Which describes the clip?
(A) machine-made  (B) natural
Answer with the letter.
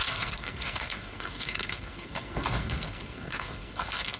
A